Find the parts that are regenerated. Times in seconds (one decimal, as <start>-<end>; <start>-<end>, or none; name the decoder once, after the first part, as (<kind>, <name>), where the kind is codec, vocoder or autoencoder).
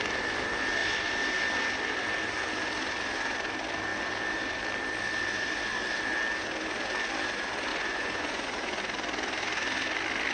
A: 7.7-8.8 (vocoder, Vocos)